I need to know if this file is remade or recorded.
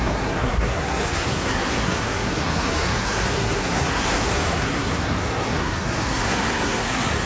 remade